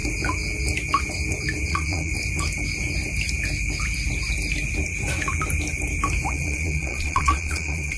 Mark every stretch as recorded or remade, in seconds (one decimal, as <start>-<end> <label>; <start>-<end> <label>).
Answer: 0.0-1.7 recorded; 1.7-2.1 remade; 2.1-6.3 recorded; 6.3-8.0 remade